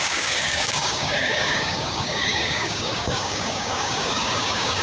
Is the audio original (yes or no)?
no